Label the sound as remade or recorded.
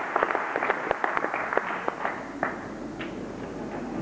recorded